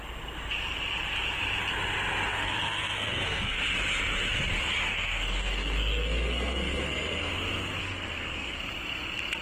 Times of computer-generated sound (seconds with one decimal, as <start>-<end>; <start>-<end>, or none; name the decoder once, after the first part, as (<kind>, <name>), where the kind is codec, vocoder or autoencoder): 2.3-3.6 (codec, SNAC); 4.9-7.3; 7.8-8.6